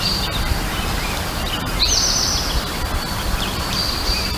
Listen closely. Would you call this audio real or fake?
real